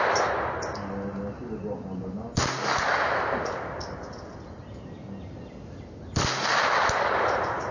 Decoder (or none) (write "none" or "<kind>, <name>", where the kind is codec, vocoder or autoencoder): none